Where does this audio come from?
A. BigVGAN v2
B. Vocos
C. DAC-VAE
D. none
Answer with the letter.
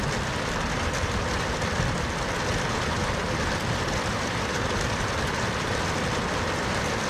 D